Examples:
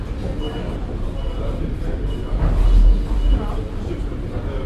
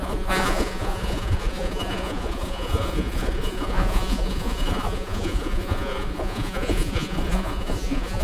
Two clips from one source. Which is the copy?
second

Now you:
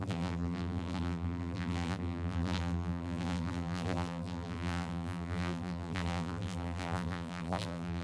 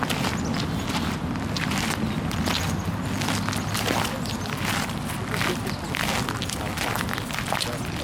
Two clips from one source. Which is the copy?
first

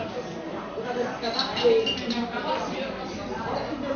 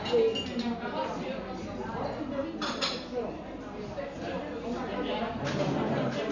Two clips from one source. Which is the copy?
first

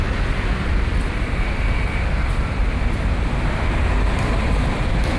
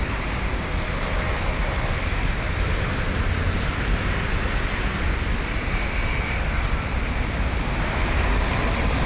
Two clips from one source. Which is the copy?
second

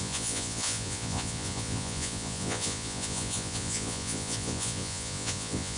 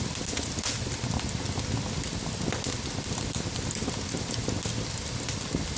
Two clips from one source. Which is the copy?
first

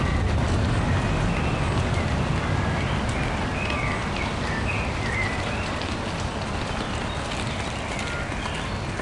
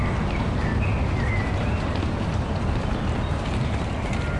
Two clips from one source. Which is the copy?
second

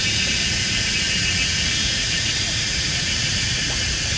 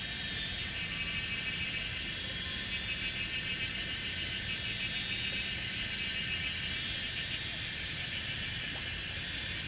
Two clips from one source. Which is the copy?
first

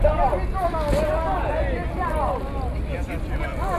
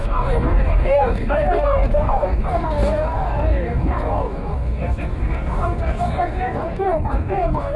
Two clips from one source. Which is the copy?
second